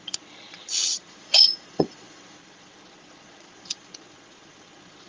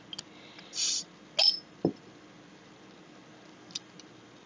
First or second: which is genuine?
second